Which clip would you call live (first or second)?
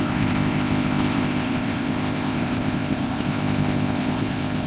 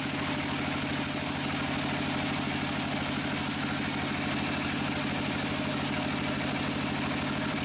second